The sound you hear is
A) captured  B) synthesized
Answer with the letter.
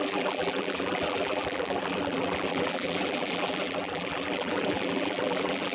B